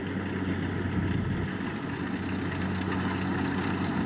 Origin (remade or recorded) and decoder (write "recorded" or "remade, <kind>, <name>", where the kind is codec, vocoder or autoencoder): recorded